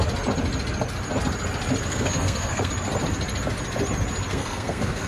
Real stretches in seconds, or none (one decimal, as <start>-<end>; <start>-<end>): 0.0-1.9; 2.7-4.3